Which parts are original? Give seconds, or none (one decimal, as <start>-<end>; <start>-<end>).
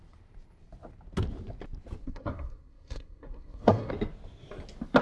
0.0-2.0; 3.9-5.0